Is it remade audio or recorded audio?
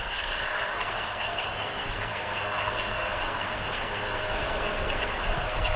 remade